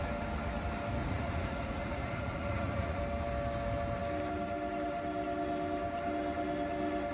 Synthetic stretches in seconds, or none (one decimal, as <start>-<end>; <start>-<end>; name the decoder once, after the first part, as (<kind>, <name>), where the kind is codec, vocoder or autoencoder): 1.0-3.0 (vocoder, Vocos)